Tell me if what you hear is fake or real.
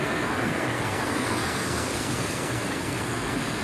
fake